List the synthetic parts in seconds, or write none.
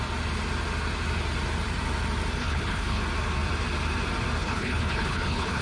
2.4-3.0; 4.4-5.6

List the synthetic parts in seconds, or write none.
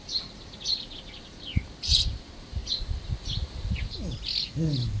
none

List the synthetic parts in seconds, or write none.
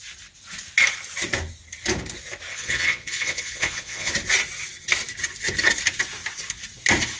2.5-4.1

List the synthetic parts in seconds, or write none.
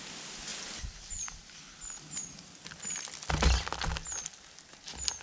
none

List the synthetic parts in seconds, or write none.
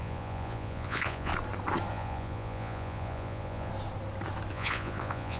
0.0-1.3; 1.9-3.7; 4.5-5.4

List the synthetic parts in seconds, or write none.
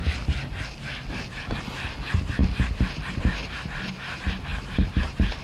none